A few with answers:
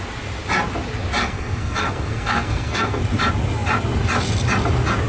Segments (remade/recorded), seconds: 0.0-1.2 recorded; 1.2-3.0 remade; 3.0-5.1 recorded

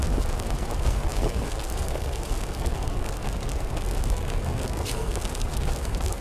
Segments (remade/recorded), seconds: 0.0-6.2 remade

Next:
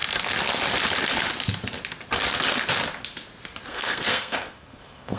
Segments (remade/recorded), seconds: 0.0-3.7 recorded; 3.7-5.2 remade

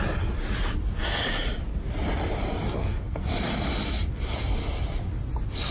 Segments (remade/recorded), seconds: 0.0-2.8 recorded; 2.8-3.3 remade; 3.3-5.7 recorded